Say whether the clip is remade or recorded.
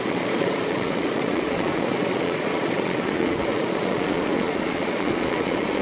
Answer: remade